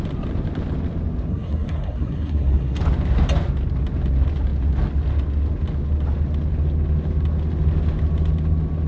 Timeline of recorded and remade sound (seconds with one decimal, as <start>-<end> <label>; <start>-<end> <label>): 0.0-1.3 recorded; 1.3-2.8 remade; 2.8-8.9 recorded